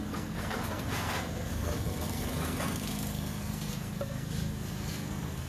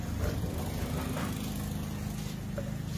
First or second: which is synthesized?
first